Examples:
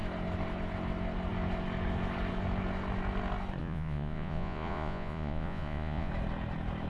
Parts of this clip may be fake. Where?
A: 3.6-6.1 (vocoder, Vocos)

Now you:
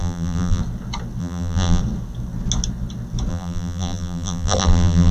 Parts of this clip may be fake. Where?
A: 0.0-0.6 (vocoder, BigVGAN v2); 1.2-1.8; 3.3-5.1

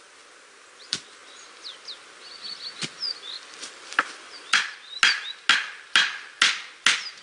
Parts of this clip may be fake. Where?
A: none

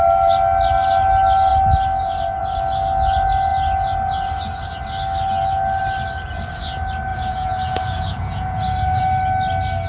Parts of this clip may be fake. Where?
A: 7.1-9.0 (vocoder, Vocos)

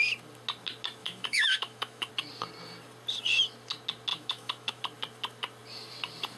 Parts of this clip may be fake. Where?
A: 1.0-2.1 (autoencoder, DAC-VAE); 4.1-4.8